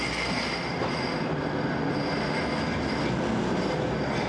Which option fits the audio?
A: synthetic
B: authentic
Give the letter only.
B